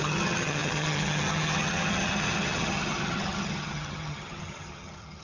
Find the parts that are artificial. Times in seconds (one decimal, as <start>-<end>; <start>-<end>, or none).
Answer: 0.0-5.2